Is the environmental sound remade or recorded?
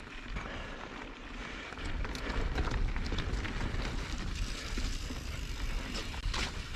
recorded